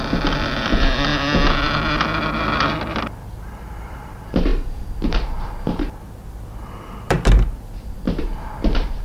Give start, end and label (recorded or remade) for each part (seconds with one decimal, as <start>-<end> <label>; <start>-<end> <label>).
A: 0.0-1.1 remade; 1.1-2.7 recorded; 2.7-9.0 remade